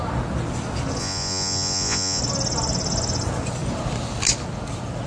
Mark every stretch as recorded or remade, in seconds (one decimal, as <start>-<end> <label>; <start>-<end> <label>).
0.0-1.0 recorded; 1.0-2.2 remade; 2.2-5.1 recorded